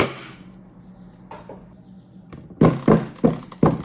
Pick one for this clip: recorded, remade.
recorded